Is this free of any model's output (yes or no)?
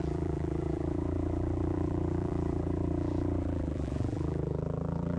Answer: no